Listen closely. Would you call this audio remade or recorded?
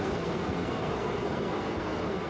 remade